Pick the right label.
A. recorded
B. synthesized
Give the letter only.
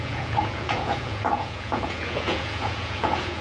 B